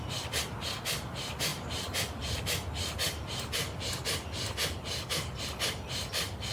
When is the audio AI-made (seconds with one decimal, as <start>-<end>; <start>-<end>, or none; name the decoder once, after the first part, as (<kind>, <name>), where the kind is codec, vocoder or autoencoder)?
none